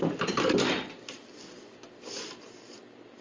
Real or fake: real